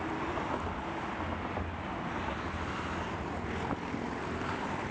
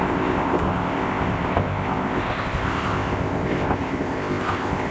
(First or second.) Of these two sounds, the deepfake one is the second